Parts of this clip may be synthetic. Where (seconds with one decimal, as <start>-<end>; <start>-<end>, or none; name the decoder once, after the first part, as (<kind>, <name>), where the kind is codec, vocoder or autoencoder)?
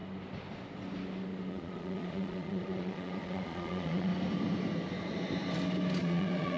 1.5-4.1 (vocoder, Vocos); 6.0-6.6